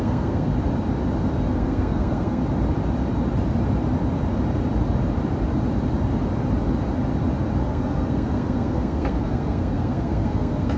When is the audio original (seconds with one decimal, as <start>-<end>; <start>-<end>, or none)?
0.5-1.5; 2.4-7.6